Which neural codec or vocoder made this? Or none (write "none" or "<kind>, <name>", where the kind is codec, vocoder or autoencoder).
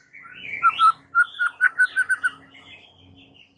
none